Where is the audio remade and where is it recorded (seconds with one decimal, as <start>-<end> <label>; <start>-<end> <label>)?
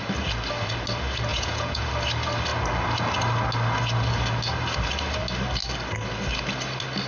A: 0.0-1.3 recorded; 1.3-1.9 remade; 1.9-7.1 recorded